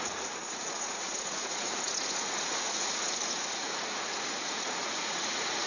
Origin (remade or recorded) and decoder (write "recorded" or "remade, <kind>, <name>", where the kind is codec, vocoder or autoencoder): remade, vocoder, Vocos